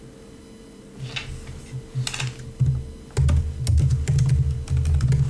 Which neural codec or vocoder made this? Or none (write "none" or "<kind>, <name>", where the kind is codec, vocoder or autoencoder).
none